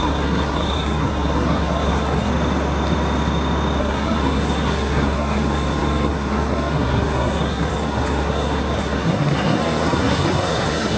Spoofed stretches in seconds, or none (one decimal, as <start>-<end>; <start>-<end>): 0.0-2.3; 3.8-11.0